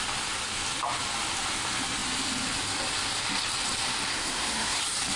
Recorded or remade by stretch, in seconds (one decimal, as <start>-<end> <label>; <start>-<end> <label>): 0.0-4.1 recorded; 4.1-4.8 remade; 4.8-5.2 recorded

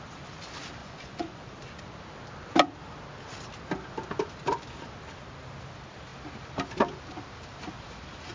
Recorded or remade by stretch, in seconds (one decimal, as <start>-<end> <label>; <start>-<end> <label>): 0.0-0.8 recorded; 0.8-1.4 remade; 1.4-8.3 recorded

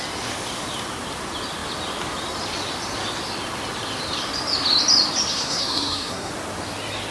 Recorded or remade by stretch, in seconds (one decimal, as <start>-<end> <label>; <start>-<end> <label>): 0.0-5.3 recorded; 5.3-6.3 remade; 6.3-7.1 recorded

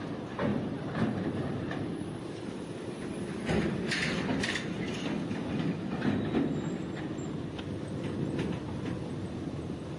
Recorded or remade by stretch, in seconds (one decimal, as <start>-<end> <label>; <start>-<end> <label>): 0.0-0.5 recorded; 0.5-2.6 remade; 2.6-10.0 recorded

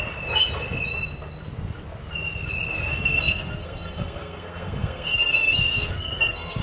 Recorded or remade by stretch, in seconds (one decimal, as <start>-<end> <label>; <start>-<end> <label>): 0.0-2.9 recorded; 2.9-6.6 remade